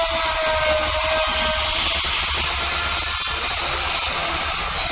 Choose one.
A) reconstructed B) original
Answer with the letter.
B